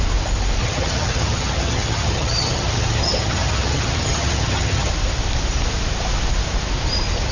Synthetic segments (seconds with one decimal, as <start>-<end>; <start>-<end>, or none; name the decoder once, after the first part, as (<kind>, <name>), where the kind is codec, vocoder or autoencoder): 0.6-4.9 (vocoder, HiFi-GAN)